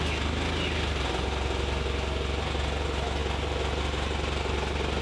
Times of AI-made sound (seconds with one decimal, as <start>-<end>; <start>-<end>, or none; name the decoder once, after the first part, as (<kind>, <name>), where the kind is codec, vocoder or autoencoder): none